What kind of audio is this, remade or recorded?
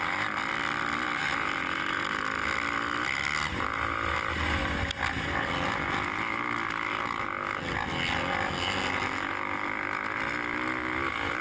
recorded